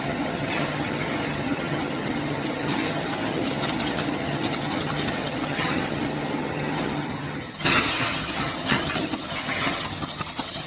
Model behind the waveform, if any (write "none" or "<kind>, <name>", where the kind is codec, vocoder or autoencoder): vocoder, HiFi-GAN